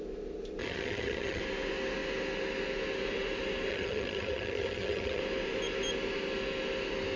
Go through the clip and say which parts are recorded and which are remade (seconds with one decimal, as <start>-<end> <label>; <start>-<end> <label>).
0.0-0.6 recorded; 0.6-1.4 remade; 1.4-3.7 recorded; 3.7-5.2 remade; 5.2-7.2 recorded